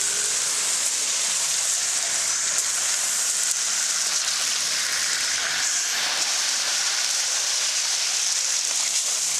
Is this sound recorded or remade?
remade